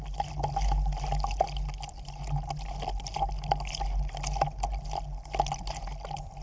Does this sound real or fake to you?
real